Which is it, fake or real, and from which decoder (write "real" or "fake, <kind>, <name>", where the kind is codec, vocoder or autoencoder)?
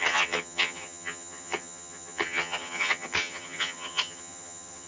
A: fake, vocoder, HiFi-GAN